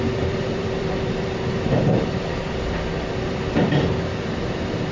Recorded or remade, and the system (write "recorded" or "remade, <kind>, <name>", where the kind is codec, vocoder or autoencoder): remade, vocoder, BigVGAN v2